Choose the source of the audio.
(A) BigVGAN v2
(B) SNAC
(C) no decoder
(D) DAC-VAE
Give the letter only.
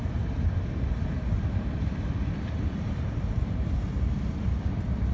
C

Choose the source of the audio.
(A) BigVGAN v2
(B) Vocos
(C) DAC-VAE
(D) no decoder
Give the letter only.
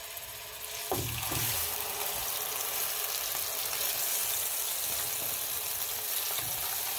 D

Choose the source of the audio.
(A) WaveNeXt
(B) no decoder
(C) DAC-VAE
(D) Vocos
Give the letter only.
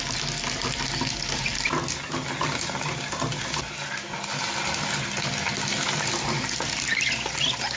B